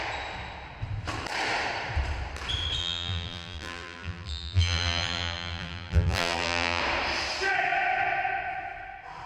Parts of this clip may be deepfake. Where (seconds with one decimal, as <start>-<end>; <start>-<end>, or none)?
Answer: 2.8-6.8